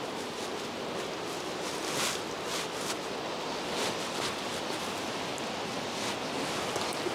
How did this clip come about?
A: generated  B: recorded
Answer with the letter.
B